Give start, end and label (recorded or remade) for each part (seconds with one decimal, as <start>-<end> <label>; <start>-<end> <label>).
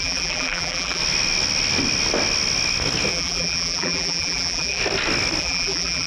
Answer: 0.0-1.0 remade; 1.0-3.1 recorded; 3.1-4.8 remade; 4.8-5.4 recorded; 5.4-6.1 remade